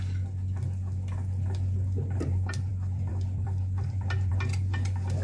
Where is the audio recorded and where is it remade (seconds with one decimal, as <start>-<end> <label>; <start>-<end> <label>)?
0.0-2.7 recorded; 2.7-4.3 remade; 4.3-5.2 recorded